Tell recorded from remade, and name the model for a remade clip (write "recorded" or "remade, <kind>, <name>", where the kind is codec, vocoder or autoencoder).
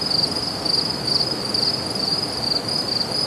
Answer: recorded